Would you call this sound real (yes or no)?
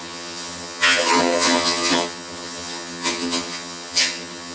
no